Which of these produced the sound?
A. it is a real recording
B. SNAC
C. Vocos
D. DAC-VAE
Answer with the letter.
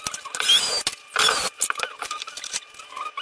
A